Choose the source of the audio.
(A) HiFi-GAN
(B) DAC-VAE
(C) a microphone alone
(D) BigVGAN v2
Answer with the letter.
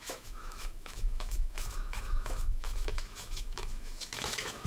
B